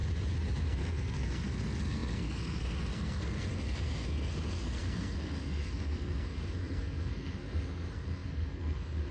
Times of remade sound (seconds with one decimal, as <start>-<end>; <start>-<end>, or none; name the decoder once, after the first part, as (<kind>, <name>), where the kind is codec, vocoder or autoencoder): 0.6-9.1 (codec, SNAC)